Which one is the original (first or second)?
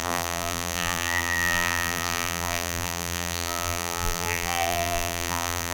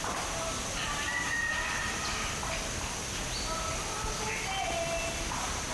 second